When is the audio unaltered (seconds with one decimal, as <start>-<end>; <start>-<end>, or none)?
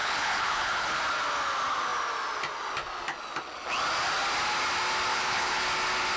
1.0-5.1; 5.6-6.2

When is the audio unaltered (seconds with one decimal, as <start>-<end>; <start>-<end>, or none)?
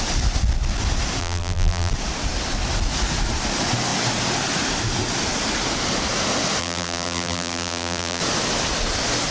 0.0-1.2; 1.9-6.6; 8.2-9.3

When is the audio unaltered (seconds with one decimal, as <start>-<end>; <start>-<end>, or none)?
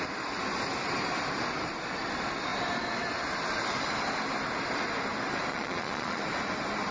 0.0-5.5; 6.2-6.9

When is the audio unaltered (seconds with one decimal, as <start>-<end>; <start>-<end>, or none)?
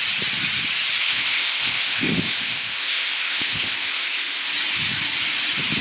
0.0-1.0; 4.5-5.8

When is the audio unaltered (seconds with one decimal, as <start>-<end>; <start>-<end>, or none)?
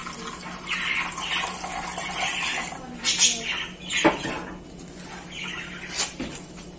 0.0-6.8